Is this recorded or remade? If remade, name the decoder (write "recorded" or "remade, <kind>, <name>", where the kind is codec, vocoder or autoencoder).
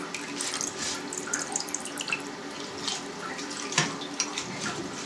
remade, vocoder, BigVGAN v2